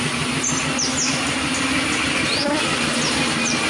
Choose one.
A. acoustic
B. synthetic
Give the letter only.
A